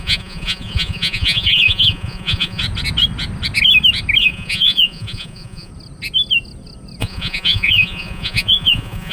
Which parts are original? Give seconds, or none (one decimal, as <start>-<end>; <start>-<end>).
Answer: 2.6-4.2; 5.7-7.0